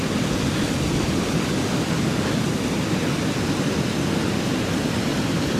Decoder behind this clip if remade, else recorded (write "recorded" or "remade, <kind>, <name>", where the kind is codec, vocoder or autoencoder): recorded